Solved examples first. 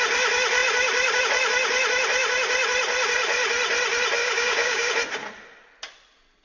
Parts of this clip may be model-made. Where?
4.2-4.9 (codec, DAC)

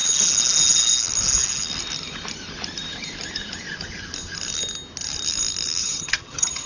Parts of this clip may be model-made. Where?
5.8-6.7 (vocoder, HiFi-GAN)

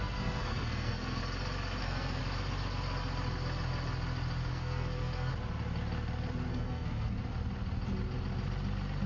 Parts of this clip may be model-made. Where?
0.0-1.2 (codec, SNAC); 1.8-2.2; 4.5-5.3; 6.5-7.2

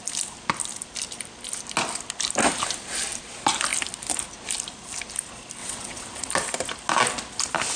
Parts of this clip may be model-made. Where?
5.6-6.3 (vocoder, WaveNeXt)

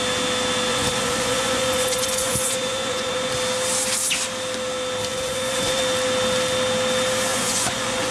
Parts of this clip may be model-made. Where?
0.7-3.3 (vocoder, Vocos); 5.1-5.8; 7.3-8.1

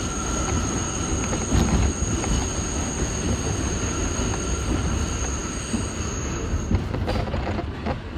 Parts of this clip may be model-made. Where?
none

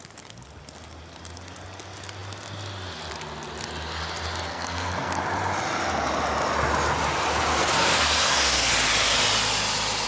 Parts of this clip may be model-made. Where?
4.5-5.2 (codec, SNAC); 7.5-8.7